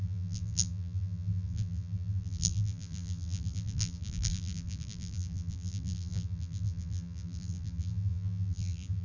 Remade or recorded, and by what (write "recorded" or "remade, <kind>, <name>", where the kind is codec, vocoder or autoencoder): remade, vocoder, BigVGAN v2